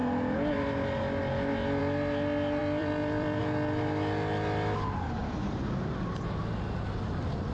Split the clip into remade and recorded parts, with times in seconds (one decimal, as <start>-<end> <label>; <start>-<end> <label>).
0.0-2.6 recorded; 2.6-3.4 remade; 3.4-5.2 recorded; 5.2-6.4 remade; 6.4-7.5 recorded